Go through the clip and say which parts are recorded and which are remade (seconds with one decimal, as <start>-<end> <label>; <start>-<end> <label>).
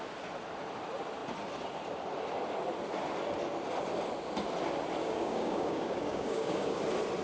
0.0-5.0 recorded; 5.0-6.8 remade; 6.8-7.2 recorded